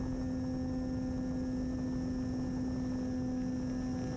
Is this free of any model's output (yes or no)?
yes